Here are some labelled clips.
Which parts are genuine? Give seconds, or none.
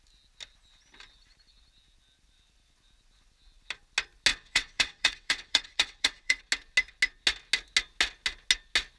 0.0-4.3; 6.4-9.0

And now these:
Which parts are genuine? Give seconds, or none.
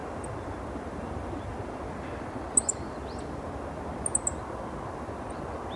0.0-5.8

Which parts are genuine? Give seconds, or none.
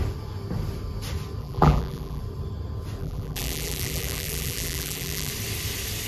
0.0-1.4; 2.2-3.0; 5.3-6.1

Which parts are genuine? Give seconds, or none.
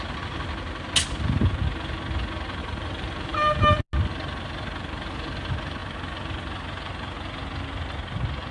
0.0-2.6; 3.8-8.5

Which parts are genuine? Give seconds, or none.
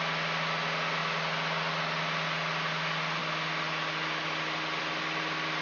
0.0-5.6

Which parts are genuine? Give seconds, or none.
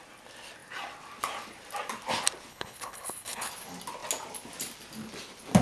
0.0-2.5; 3.5-5.6